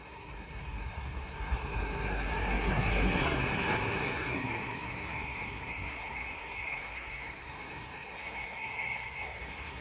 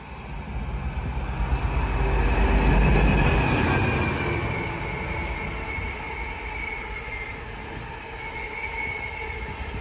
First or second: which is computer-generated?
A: first